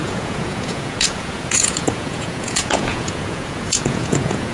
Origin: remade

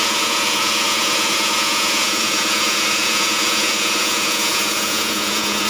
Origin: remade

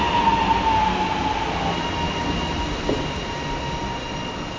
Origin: recorded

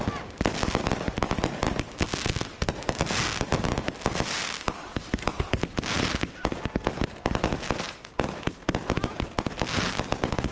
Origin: recorded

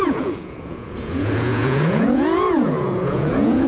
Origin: remade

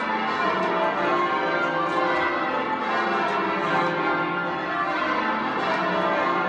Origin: recorded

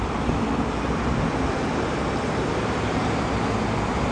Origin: recorded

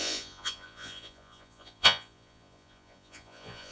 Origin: remade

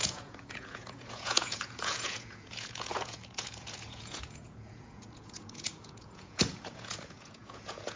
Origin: remade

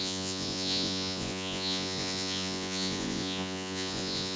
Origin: remade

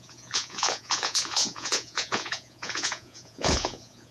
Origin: remade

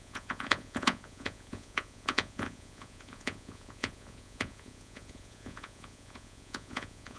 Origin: remade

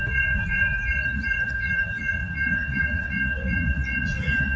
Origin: remade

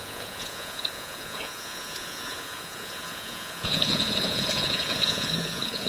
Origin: remade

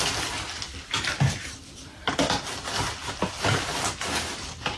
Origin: recorded